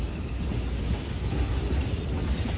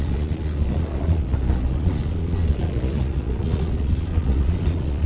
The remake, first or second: second